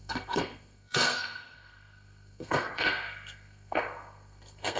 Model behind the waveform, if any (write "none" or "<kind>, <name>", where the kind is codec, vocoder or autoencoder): codec, SNAC